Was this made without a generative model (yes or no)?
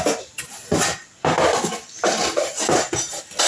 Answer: yes